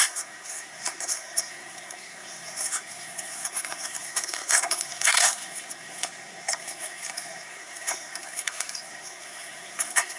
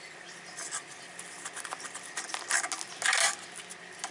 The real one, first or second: second